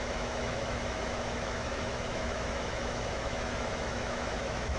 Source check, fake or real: fake